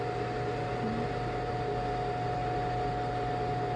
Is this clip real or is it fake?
real